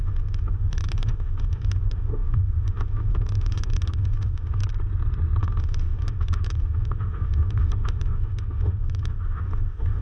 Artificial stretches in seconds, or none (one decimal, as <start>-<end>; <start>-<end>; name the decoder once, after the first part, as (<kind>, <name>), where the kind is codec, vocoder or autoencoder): 0.0-4.6 (autoencoder, DAC-VAE); 5.4-10.0